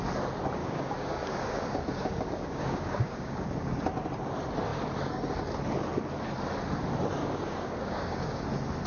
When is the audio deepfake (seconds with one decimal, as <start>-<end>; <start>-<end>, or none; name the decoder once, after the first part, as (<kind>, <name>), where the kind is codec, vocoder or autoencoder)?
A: 0.6-3.8 (codec, DAC); 7.2-8.4